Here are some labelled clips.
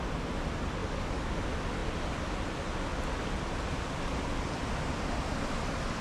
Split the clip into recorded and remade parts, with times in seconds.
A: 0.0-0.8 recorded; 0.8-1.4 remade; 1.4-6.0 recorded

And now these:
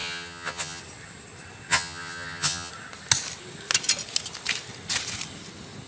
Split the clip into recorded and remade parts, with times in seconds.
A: 0.0-0.8 remade; 0.8-1.7 recorded; 1.7-2.7 remade; 2.7-5.9 recorded

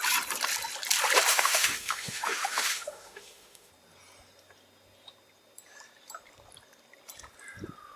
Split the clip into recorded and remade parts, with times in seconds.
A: 0.0-1.3 recorded; 1.3-3.7 remade; 3.7-8.0 recorded

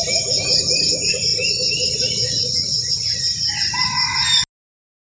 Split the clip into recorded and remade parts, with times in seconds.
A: 0.0-5.0 recorded

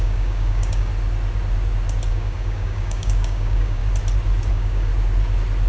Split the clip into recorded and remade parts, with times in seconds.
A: 0.0-0.9 remade; 0.9-2.1 recorded; 2.1-3.8 remade; 3.8-4.5 recorded; 4.5-4.9 remade; 4.9-5.7 recorded

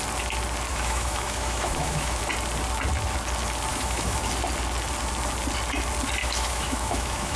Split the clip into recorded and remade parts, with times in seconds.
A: 0.0-0.7 recorded; 0.7-2.2 remade; 2.2-3.7 recorded; 3.7-4.2 remade; 4.2-6.2 recorded; 6.2-7.4 remade

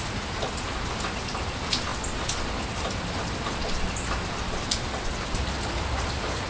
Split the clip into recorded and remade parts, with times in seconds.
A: 0.0-6.5 recorded

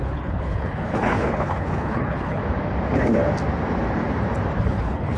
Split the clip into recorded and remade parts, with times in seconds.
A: 0.0-2.4 remade; 2.4-4.6 recorded; 4.6-5.2 remade